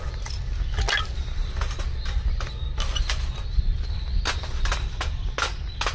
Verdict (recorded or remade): recorded